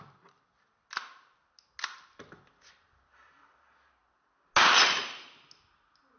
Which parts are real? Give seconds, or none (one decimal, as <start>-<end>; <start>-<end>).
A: 0.0-6.2